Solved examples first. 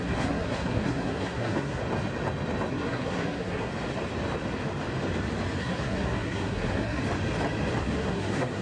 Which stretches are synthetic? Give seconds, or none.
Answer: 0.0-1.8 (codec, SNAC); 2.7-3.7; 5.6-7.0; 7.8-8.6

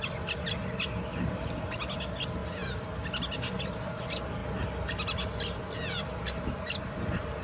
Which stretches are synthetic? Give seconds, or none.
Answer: none

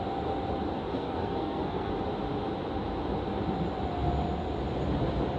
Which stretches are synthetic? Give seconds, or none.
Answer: 0.9-1.9 (codec, SNAC)

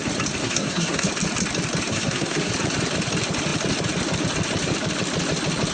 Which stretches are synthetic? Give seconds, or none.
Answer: 0.4-1.1 (codec, SNAC); 1.9-2.5

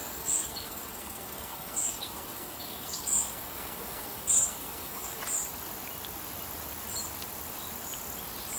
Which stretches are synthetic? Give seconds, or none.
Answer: 0.0-5.2 (codec, SNAC)

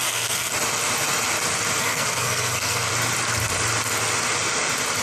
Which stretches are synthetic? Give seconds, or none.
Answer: 0.0-0.5 (codec, SNAC); 1.8-2.9

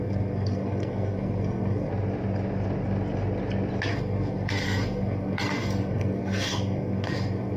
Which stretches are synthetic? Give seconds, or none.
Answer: 0.0-1.9 (codec, SNAC); 3.9-7.6

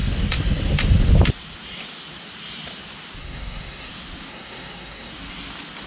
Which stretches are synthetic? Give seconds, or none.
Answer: 3.2-3.9 (codec, SNAC); 4.3-5.1